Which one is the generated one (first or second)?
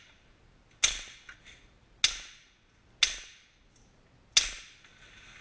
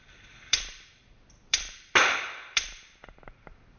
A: second